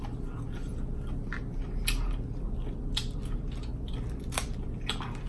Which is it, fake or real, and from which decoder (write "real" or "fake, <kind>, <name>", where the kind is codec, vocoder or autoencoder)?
real